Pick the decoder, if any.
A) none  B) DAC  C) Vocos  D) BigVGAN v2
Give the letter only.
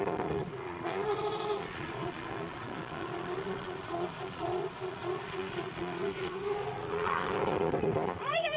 C